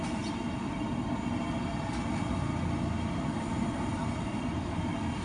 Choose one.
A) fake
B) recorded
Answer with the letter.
B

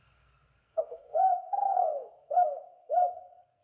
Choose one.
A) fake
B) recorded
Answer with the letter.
A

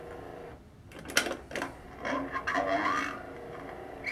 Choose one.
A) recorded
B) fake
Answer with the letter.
A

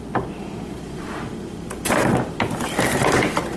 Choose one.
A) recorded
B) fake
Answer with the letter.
A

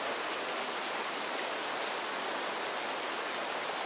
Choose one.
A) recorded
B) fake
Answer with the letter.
A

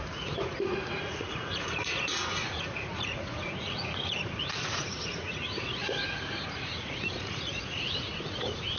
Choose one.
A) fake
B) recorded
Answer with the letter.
A